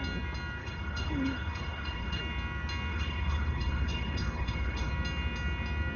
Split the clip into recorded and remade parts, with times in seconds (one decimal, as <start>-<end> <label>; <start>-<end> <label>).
0.0-0.6 recorded; 0.6-2.2 remade; 2.2-2.9 recorded; 2.9-4.9 remade; 4.9-6.0 recorded